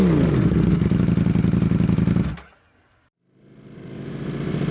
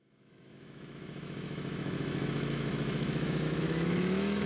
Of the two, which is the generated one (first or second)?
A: second